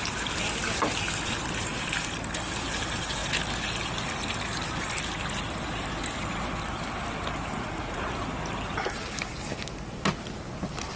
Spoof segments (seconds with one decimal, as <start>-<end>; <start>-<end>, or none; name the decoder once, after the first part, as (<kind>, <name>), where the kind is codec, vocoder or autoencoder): 7.5-8.2 (vocoder, Vocos)